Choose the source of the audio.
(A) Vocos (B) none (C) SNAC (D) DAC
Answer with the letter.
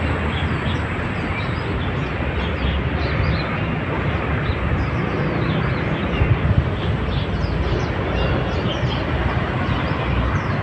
B